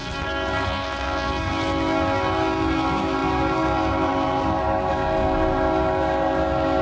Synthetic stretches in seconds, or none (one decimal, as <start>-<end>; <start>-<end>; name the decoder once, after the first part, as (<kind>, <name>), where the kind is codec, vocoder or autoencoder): 0.0-1.5 (codec, SNAC)